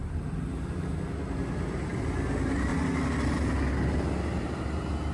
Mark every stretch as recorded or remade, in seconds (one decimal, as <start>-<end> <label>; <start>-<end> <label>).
0.0-5.1 recorded